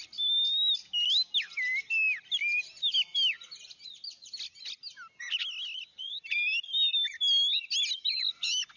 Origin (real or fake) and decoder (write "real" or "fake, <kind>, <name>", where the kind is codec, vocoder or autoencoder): real